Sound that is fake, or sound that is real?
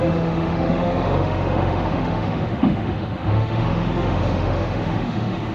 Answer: fake